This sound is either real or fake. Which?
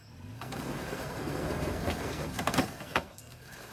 fake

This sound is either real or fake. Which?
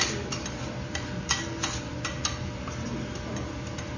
real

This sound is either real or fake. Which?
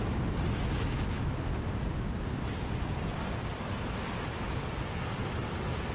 real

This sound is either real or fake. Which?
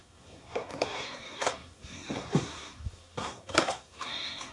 fake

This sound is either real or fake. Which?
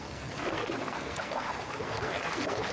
fake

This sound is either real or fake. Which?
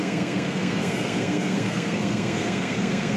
fake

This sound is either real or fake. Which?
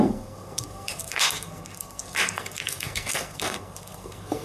fake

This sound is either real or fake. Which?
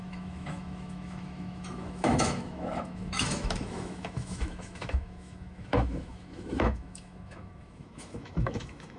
fake